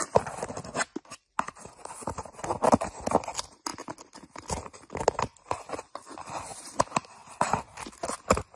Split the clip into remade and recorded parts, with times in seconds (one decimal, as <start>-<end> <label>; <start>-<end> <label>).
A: 0.0-7.2 recorded; 7.2-7.8 remade; 7.8-8.6 recorded